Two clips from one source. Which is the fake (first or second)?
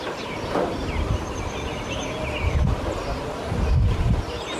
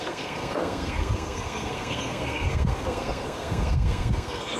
second